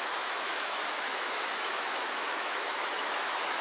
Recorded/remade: remade